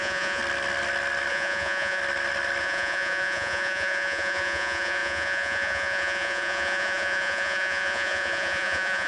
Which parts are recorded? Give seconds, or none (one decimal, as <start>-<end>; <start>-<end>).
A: 0.4-1.3; 2.0-2.6